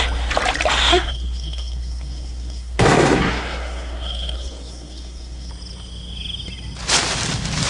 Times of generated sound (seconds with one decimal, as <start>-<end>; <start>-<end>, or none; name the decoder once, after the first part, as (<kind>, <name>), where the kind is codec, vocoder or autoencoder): 0.9-5.5 (codec, SNAC)